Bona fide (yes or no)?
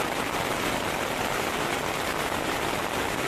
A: yes